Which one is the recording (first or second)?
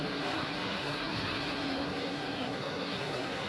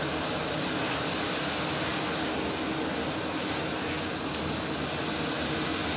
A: second